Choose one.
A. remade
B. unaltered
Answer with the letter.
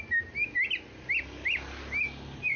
B